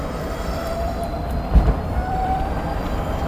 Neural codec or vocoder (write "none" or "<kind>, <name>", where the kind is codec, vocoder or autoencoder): vocoder, BigVGAN v2